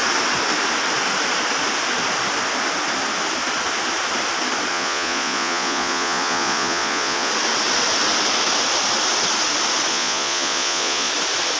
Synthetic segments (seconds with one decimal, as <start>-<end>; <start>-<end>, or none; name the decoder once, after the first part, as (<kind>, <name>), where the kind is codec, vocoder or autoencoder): 4.7-7.3 (vocoder, Vocos); 9.9-11.1